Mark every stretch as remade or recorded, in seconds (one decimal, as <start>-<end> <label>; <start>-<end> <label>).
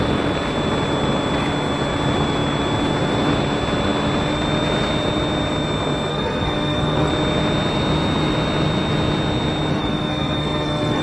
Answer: 0.0-6.1 recorded; 6.1-7.1 remade; 7.1-9.7 recorded; 9.7-11.0 remade